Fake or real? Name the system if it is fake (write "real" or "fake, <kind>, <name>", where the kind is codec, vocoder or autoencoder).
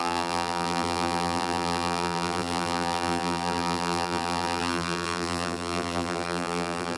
fake, vocoder, BigVGAN v2